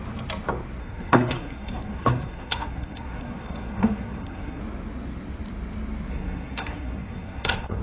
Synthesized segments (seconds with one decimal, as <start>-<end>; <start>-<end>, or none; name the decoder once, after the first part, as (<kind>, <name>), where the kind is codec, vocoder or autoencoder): 0.8-4.6 (codec, SNAC); 6.1-7.8